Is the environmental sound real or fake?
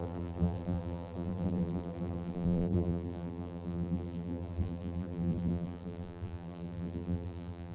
fake